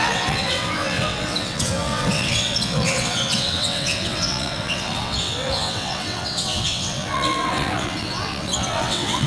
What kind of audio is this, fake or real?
fake